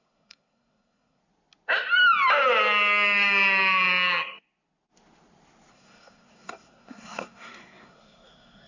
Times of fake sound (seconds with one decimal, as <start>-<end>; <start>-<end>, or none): 0.0-1.2; 5.7-8.7